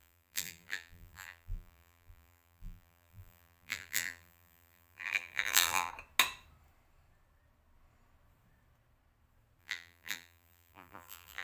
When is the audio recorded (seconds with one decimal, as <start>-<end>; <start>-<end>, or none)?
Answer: 5.9-9.6